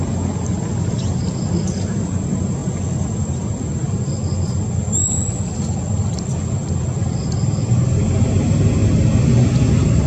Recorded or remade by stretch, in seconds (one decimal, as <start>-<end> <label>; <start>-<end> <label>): 0.0-10.1 recorded